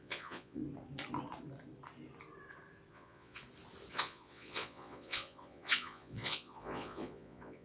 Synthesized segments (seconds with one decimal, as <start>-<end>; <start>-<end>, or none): 0.0-0.6; 2.9-3.4; 3.9-7.6